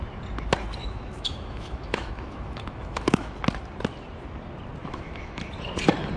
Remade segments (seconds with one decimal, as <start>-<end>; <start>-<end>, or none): 0.8-3.3; 4.8-5.4